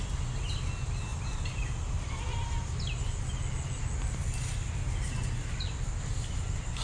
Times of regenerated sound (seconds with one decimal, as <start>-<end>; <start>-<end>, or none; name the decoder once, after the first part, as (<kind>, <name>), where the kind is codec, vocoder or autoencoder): none